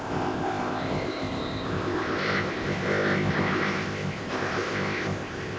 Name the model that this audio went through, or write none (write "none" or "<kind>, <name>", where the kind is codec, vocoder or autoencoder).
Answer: codec, ZipCodec